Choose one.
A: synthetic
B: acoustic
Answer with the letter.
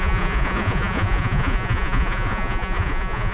A